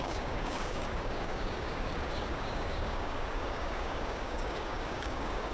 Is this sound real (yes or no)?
no